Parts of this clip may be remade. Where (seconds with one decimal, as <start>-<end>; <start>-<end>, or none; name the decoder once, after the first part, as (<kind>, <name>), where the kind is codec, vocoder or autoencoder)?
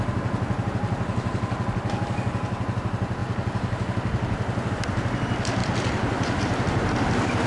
none